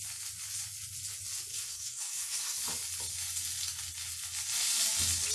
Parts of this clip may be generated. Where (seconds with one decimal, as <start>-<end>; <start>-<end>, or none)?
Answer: 1.5-2.6